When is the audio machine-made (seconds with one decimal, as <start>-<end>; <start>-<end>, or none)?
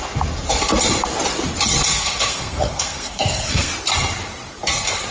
1.9-3.7